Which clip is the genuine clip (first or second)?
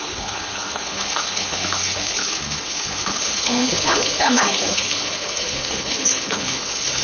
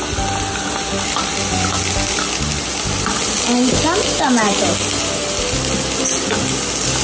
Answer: second